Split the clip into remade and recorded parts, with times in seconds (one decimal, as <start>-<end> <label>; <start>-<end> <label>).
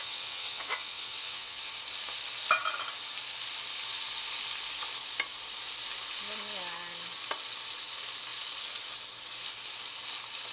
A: 0.0-1.7 remade; 1.7-10.5 recorded